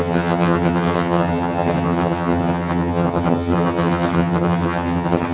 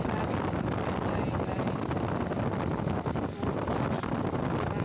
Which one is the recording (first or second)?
second